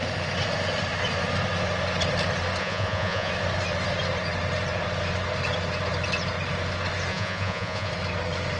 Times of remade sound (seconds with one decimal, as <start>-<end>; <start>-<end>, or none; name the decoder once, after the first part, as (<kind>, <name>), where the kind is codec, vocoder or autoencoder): 2.6-3.3 (vocoder, Vocos); 7.1-7.9

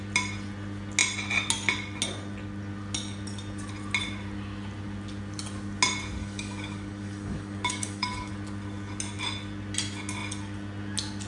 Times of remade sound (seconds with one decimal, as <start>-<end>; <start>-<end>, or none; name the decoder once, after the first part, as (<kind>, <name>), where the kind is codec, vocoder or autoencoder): 6.2-8.3 (codec, DAC)